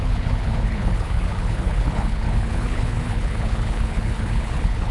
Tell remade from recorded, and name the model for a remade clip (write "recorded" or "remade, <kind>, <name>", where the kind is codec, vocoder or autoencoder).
remade, codec, HILCodec